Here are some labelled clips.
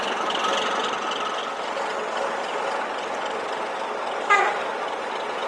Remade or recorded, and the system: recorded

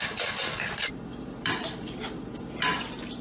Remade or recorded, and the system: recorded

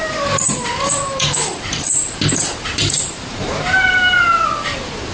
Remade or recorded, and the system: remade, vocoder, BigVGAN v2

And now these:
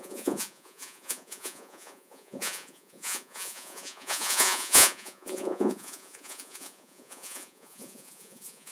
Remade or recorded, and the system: remade, vocoder, Vocos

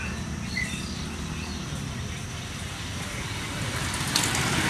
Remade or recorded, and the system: recorded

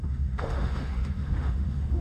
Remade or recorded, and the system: remade, autoencoder, DAC-VAE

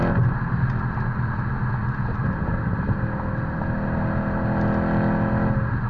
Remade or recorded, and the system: recorded